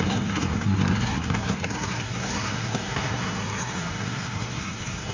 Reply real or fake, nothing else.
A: fake